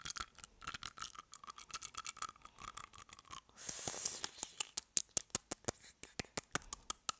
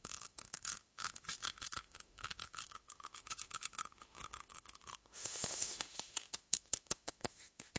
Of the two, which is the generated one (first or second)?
second